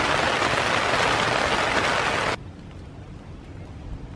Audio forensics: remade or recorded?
recorded